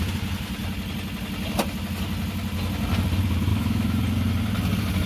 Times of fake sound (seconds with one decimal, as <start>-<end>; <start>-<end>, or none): 3.5-4.0